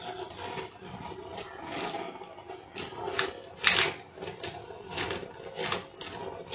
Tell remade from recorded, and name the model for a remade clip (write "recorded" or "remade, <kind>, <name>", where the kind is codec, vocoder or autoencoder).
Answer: recorded